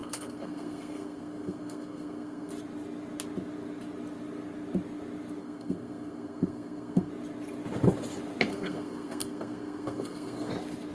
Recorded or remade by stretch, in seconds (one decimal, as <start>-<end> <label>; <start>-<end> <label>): 0.0-2.5 remade; 2.5-5.4 recorded; 5.4-7.1 remade; 7.1-8.5 recorded; 8.5-10.5 remade; 10.5-10.9 recorded